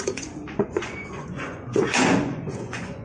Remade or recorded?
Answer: remade